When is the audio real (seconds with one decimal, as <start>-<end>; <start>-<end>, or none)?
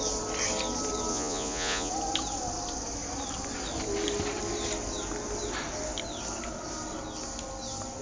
0.0-1.1; 1.9-8.0